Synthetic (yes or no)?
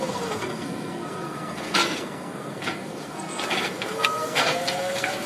yes